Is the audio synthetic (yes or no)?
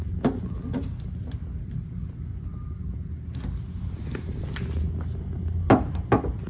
no